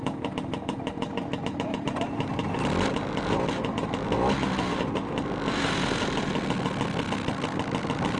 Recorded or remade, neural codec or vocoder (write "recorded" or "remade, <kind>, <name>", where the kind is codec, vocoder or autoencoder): recorded